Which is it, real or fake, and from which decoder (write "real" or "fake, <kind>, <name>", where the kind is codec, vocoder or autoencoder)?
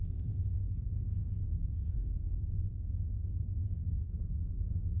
fake, codec, SNAC